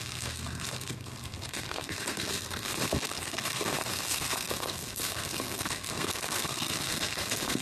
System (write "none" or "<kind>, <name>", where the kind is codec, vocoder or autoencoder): codec, SNAC